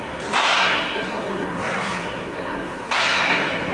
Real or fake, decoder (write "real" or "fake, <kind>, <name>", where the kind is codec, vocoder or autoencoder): fake, codec, SNAC